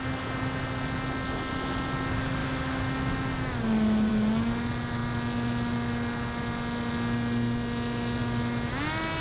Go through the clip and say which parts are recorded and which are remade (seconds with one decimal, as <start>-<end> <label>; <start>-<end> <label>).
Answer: 0.0-9.2 recorded